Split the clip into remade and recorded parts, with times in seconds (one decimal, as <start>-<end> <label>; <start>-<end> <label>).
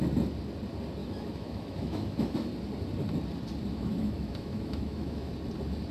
0.0-1.0 recorded; 1.0-2.5 remade; 2.5-3.7 recorded; 3.7-5.3 remade; 5.3-5.9 recorded